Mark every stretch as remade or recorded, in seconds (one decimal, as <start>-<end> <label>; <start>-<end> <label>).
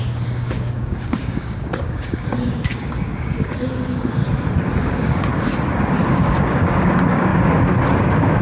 0.0-4.2 remade; 4.2-4.8 recorded; 4.8-5.5 remade; 5.5-6.1 recorded; 6.1-7.3 remade; 7.3-8.0 recorded; 8.0-8.4 remade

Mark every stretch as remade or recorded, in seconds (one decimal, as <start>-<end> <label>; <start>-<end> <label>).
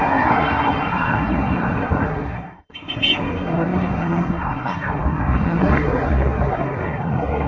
0.0-7.5 remade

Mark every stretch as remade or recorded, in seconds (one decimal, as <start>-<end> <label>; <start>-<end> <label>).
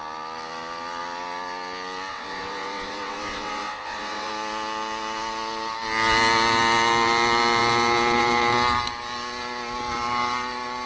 0.0-2.1 recorded; 2.1-4.3 remade; 4.3-10.9 recorded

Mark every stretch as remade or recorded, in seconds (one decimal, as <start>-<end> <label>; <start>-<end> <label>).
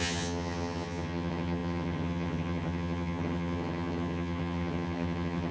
0.0-5.5 remade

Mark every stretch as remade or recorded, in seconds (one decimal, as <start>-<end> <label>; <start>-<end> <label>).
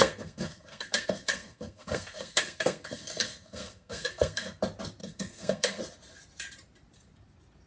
0.0-4.6 remade; 4.6-5.0 recorded; 5.0-5.8 remade; 5.8-7.7 recorded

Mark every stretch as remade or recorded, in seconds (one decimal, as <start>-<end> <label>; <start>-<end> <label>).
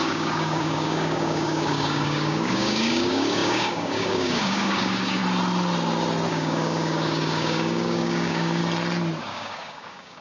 0.0-5.2 remade; 5.2-6.3 recorded; 6.3-8.6 remade; 8.6-9.2 recorded; 9.2-10.2 remade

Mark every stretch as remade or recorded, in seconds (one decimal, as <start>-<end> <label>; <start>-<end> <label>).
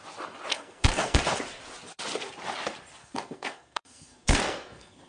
0.0-0.5 recorded; 0.5-1.2 remade; 1.2-3.0 recorded; 3.0-5.1 remade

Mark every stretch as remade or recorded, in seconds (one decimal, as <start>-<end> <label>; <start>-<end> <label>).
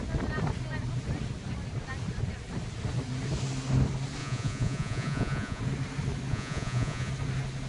0.0-4.2 recorded; 4.2-5.6 remade; 5.6-6.3 recorded; 6.3-7.1 remade; 7.1-7.7 recorded